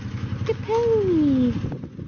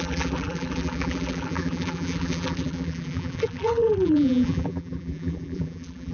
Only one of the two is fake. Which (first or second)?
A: second